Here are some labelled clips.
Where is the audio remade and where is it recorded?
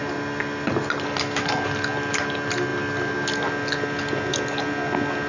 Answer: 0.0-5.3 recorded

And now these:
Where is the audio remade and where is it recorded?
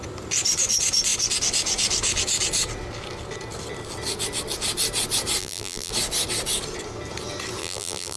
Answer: 0.0-5.4 recorded; 5.4-5.9 remade; 5.9-7.6 recorded; 7.6-8.2 remade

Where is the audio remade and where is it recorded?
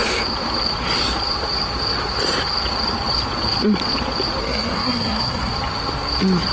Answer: 0.0-4.4 recorded; 4.4-5.5 remade; 5.5-6.5 recorded